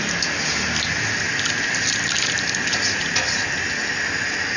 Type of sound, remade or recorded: recorded